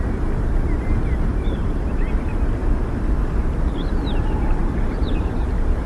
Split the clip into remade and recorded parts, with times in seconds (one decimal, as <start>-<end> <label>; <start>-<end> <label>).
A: 0.0-1.3 recorded; 1.3-2.1 remade; 2.1-4.6 recorded; 4.6-5.3 remade; 5.3-5.9 recorded